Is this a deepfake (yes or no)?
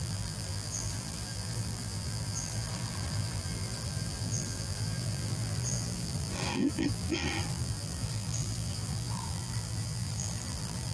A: yes